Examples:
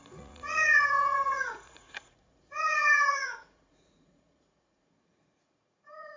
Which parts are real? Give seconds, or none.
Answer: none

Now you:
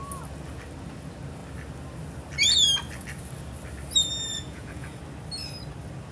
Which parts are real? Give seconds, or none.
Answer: 0.0-4.3; 5.0-6.1

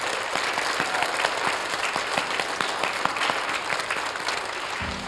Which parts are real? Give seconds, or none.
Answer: 0.0-5.1

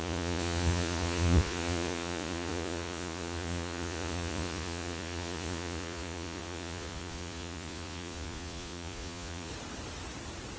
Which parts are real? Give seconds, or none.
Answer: 9.5-10.6

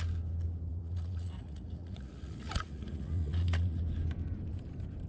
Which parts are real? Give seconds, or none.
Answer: 0.0-0.7; 3.8-5.1

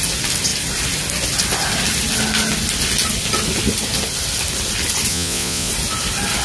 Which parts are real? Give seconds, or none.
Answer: 0.0-5.1; 5.7-6.4

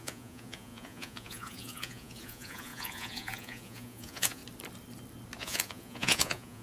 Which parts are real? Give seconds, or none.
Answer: 4.4-5.4

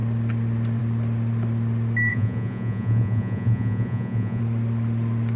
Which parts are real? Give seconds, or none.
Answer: 0.0-2.1; 4.4-5.4